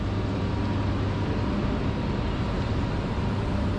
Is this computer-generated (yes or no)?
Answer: no